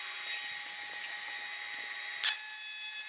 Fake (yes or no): no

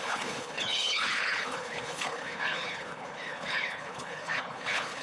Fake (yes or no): yes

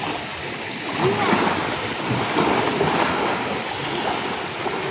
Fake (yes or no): no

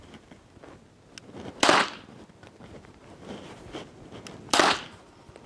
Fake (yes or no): no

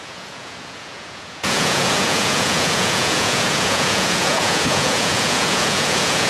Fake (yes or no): yes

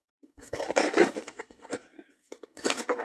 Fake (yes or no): yes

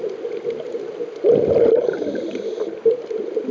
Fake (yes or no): no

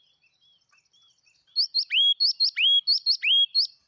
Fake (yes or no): no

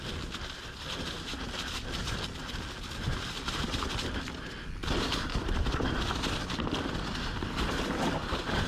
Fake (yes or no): no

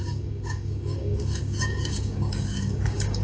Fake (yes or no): yes